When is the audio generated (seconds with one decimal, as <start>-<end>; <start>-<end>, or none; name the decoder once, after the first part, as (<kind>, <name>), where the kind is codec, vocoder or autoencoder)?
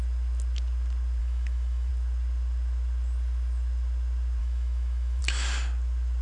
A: 1.2-1.9 (autoencoder, DAC-VAE); 4.4-5.2